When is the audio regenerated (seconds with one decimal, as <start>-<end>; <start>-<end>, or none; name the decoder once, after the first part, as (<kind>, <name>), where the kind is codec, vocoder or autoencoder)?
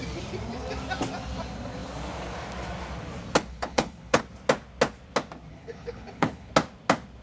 3.5-4.2 (codec, HILCodec); 5.5-6.5